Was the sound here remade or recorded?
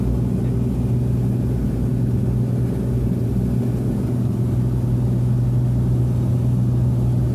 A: recorded